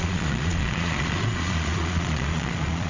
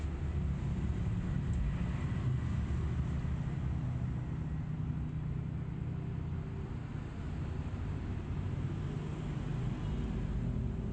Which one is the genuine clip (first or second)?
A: second